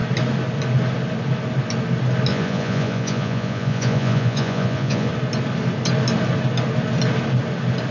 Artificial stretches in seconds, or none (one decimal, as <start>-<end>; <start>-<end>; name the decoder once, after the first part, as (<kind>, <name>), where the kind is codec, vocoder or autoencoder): 2.3-5.1 (vocoder, Vocos)